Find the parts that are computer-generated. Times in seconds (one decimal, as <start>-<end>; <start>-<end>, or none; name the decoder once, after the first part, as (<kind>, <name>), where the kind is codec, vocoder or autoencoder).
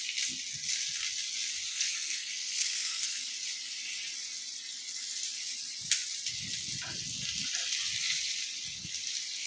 1.7-3.3 (codec, SNAC)